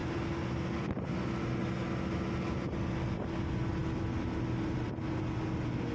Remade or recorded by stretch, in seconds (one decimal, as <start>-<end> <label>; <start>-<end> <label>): 0.0-5.9 recorded